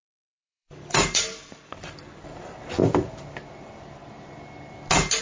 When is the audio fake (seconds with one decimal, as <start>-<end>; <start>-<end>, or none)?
0.0-2.8; 3.6-4.0